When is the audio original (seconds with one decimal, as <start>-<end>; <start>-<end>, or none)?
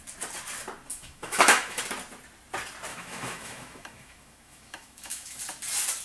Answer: 0.0-0.9; 1.8-2.9; 5.4-6.0